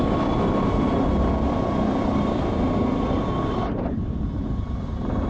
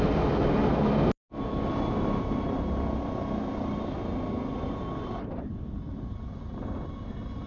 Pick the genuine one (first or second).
second